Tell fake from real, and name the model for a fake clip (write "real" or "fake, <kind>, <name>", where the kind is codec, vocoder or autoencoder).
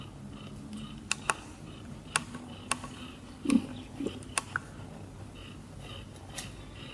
real